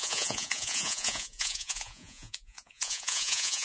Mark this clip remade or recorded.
remade